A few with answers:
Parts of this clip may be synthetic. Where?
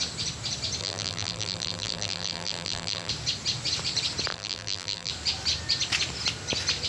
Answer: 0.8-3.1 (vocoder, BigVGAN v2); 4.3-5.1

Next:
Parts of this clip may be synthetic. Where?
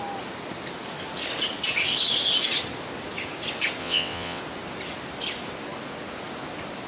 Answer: 3.8-4.4 (vocoder, WaveNeXt)